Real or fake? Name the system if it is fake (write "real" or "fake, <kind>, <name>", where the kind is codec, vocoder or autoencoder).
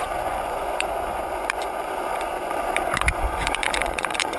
fake, vocoder, Vocos